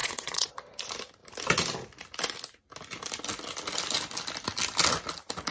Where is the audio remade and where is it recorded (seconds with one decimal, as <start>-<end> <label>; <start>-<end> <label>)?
0.0-0.5 remade; 0.5-5.5 recorded